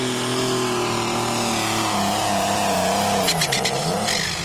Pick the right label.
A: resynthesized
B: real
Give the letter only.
B